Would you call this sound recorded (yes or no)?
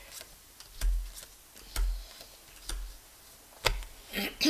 yes